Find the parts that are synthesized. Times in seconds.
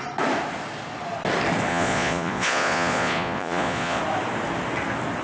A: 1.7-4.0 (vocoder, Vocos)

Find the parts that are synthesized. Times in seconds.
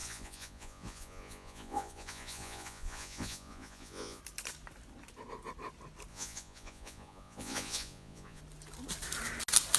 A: 0.0-4.2 (vocoder, Vocos); 6.1-8.4